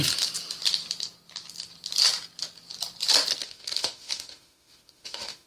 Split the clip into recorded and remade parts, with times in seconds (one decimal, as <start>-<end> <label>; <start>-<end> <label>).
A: 0.0-3.4 recorded; 3.4-5.5 remade